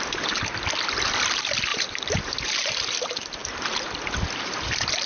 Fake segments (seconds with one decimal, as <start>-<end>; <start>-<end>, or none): 1.7-2.7; 3.4-4.0